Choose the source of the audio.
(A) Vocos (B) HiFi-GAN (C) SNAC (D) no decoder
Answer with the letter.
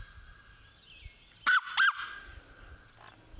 D